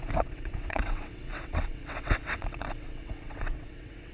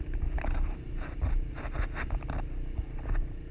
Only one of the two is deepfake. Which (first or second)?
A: first